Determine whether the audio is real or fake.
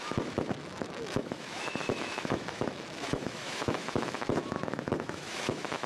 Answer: fake